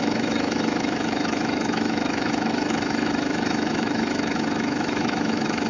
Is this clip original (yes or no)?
no